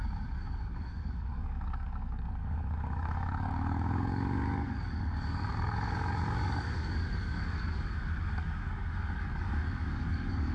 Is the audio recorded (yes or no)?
no